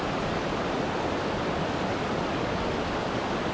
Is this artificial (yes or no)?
no